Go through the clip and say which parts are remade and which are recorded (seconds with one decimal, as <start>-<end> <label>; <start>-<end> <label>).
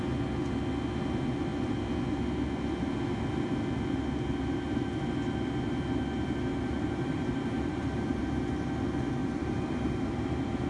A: 0.0-6.5 recorded; 6.5-8.2 remade; 8.2-9.2 recorded; 9.2-10.7 remade